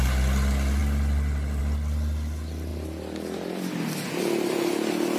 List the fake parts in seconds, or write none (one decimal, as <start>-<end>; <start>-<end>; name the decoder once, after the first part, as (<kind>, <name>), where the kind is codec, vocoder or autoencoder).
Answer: none